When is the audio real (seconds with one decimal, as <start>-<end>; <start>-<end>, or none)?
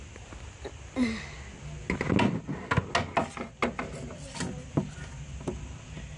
0.0-6.2